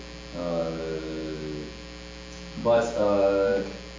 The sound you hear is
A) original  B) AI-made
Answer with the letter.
A